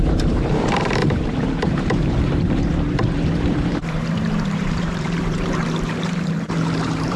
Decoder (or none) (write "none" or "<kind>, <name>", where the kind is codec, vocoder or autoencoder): vocoder, BigVGAN v2